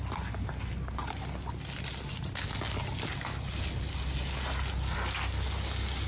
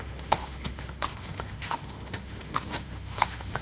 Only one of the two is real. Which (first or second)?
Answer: first